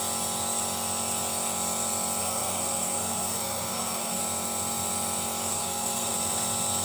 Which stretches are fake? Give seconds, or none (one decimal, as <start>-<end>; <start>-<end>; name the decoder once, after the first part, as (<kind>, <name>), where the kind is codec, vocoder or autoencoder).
2.2-4.2 (codec, SNAC); 5.5-6.1